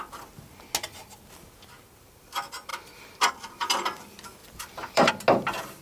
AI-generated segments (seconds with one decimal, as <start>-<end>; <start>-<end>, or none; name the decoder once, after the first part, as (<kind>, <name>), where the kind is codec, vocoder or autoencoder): 4.4-5.1 (vocoder, BigVGAN v2)